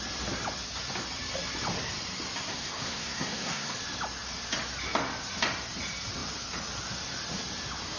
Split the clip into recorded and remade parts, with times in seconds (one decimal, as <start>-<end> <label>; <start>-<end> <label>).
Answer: 0.0-2.5 recorded; 2.5-3.7 remade; 3.7-8.0 recorded